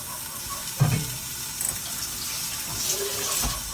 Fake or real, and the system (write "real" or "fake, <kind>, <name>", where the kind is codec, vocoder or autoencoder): real